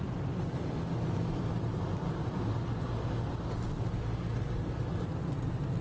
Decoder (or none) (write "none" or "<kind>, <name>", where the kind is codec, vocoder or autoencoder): none